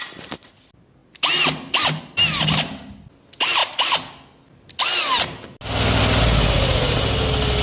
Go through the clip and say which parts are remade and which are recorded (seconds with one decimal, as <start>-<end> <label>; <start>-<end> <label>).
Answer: 0.0-7.6 recorded